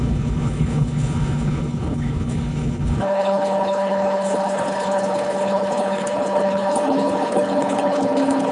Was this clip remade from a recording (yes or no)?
yes